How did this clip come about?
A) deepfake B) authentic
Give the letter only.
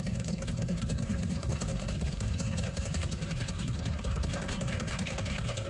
A